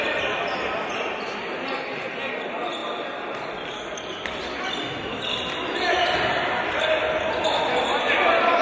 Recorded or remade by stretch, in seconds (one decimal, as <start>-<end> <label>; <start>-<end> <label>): 0.0-8.6 recorded